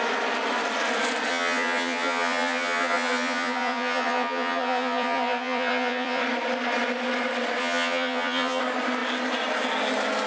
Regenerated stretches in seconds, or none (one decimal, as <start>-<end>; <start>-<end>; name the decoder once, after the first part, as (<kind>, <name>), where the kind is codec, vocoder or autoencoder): 1.3-6.2 (vocoder, HiFi-GAN); 7.6-8.6